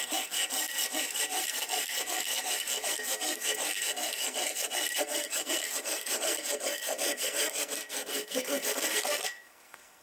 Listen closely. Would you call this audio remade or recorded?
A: remade